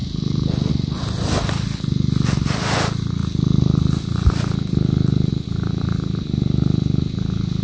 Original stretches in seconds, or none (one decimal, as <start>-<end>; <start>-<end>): 0.0-7.6